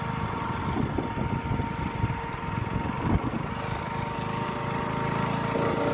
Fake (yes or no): no